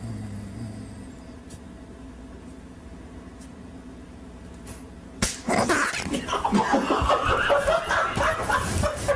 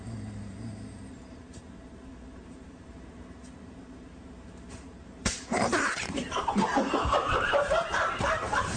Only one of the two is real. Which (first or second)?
first